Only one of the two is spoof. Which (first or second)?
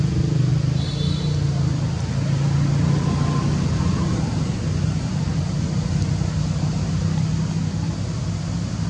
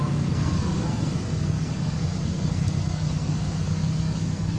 second